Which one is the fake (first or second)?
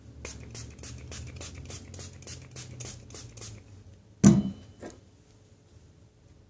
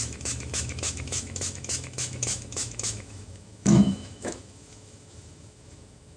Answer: second